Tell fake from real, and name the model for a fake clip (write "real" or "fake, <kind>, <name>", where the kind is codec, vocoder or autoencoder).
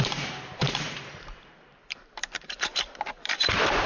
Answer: fake, vocoder, BigVGAN v2